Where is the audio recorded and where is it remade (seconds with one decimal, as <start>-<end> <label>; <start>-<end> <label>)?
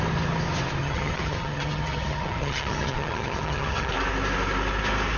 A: 0.0-0.8 recorded; 0.8-3.9 remade; 3.9-5.2 recorded